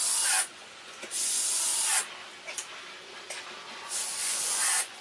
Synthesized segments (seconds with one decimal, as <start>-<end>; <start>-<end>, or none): 0.0-1.7; 3.7-5.0